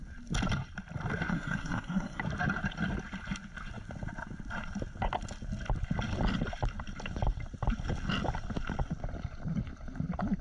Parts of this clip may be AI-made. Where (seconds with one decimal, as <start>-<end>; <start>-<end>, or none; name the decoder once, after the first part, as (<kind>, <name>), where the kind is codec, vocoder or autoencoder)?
1.3-2.2 (codec, SNAC)